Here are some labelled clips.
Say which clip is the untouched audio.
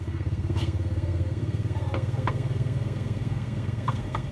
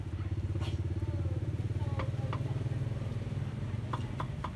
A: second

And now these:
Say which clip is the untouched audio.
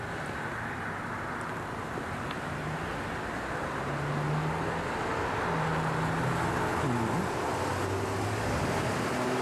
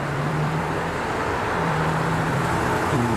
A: first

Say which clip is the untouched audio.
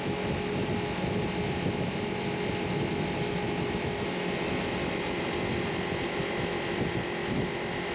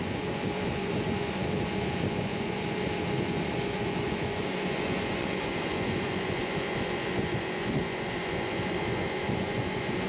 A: first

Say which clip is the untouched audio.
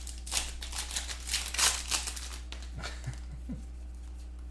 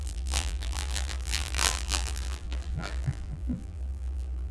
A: first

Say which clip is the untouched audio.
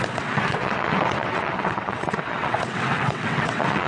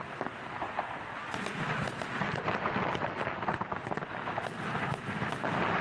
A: second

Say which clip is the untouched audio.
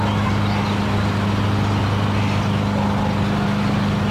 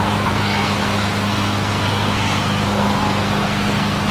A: first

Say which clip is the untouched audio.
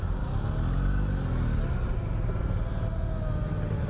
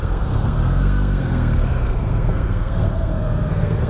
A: first